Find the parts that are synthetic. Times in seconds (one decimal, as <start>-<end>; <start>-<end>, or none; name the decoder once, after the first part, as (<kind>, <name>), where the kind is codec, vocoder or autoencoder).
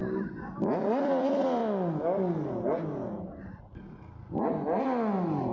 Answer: none